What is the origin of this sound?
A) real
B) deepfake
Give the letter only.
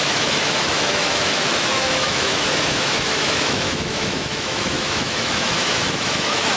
B